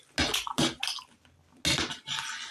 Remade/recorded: recorded